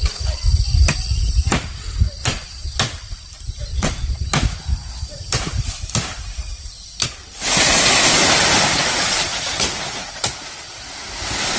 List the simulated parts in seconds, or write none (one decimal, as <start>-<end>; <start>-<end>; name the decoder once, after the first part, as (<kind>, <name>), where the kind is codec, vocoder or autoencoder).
2.2-2.8 (vocoder, Vocos); 3.7-4.3